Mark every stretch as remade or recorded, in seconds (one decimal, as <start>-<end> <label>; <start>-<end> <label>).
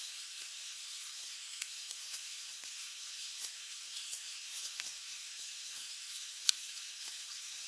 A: 0.0-7.7 remade